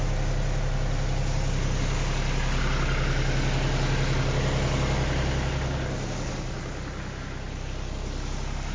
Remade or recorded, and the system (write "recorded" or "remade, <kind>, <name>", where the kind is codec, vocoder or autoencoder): recorded